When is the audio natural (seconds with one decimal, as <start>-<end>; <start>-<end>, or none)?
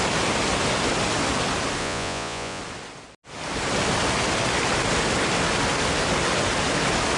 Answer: 0.0-1.8; 2.6-7.2